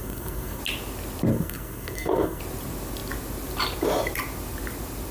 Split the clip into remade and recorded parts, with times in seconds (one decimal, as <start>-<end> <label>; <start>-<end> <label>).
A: 0.0-0.6 remade; 0.6-1.3 recorded; 1.3-2.4 remade; 2.4-5.1 recorded